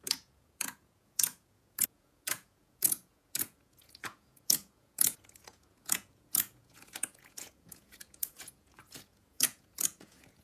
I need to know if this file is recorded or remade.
remade